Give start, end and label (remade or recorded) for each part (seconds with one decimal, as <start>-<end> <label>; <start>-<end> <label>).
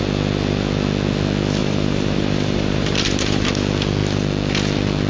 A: 0.0-1.6 recorded; 1.6-3.5 remade; 3.5-5.1 recorded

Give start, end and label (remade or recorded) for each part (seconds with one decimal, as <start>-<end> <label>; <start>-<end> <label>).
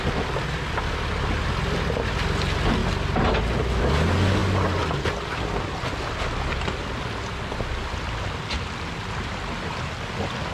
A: 0.0-10.5 recorded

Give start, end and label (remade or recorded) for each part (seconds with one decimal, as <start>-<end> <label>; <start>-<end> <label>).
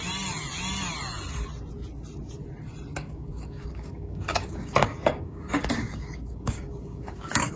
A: 0.0-2.9 recorded; 2.9-7.6 remade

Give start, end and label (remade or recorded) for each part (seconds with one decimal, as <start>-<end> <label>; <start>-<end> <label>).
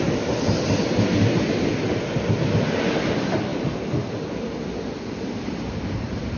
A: 0.0-6.4 recorded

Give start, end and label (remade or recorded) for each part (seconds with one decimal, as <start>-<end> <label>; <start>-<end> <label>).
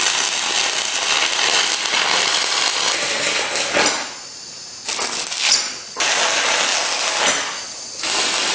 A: 0.0-8.5 recorded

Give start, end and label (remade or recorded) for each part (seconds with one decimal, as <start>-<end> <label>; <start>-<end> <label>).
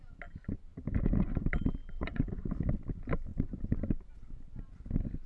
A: 0.0-1.8 recorded; 1.8-2.5 remade; 2.5-5.3 recorded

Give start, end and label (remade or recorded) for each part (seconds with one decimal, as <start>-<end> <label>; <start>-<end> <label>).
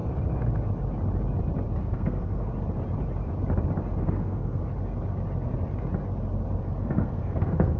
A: 0.0-1.8 recorded; 1.8-2.5 remade; 2.5-4.0 recorded; 4.0-4.6 remade; 4.6-6.8 recorded; 6.8-7.8 remade